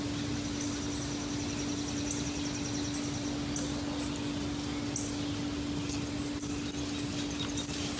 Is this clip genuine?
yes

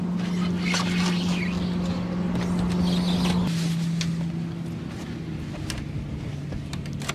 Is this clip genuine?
yes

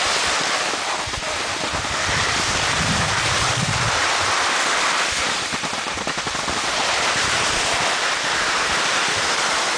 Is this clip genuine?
no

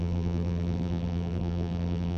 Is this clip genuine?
no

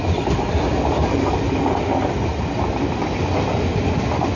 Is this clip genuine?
yes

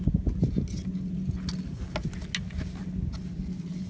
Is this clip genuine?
yes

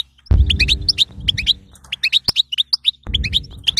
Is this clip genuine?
yes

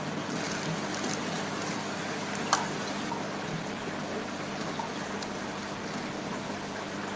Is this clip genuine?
yes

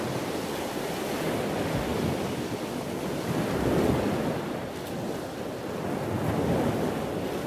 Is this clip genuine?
yes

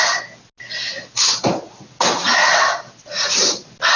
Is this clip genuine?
yes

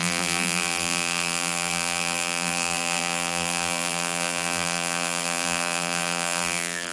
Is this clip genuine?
no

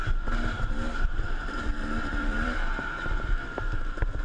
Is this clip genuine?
no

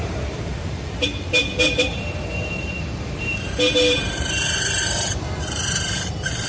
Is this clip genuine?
no